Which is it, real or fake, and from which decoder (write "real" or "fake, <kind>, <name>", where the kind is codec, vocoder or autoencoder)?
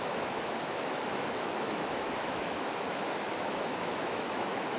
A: fake, autoencoder, DAC-VAE